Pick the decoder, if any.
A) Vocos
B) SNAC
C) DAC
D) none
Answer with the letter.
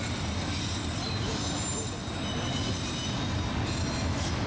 D